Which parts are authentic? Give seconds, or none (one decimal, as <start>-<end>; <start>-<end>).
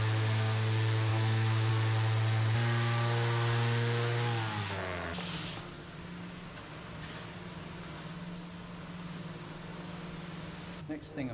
0.0-1.1; 1.7-11.3